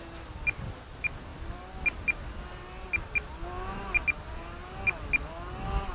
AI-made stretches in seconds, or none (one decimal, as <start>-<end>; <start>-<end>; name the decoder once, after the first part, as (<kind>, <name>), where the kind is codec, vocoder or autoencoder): none

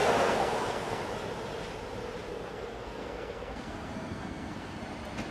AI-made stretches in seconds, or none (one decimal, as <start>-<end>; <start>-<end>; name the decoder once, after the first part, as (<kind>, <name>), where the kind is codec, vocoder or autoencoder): 0.0-1.0 (codec, SNAC); 2.3-4.8

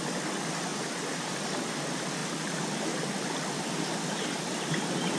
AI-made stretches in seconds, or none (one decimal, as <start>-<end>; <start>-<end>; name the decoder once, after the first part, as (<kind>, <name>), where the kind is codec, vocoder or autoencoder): none

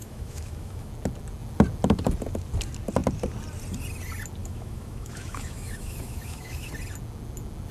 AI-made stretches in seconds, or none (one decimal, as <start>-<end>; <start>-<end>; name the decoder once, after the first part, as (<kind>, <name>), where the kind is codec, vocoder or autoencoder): 0.0-0.9 (autoencoder, DAC-VAE); 4.4-6.7

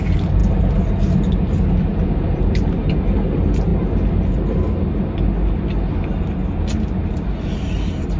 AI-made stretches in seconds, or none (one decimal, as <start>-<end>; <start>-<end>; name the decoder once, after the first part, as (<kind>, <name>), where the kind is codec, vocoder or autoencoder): none

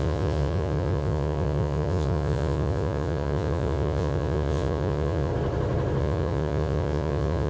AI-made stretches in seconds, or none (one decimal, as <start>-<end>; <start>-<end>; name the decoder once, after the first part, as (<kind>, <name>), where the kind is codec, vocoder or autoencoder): 0.0-5.3 (vocoder, Vocos); 6.0-7.5